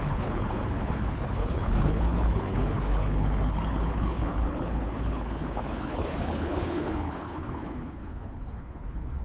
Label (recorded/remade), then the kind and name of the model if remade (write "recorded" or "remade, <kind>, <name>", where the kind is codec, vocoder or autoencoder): remade, codec, HILCodec